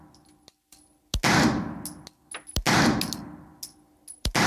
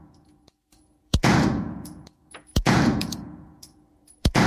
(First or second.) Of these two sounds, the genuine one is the first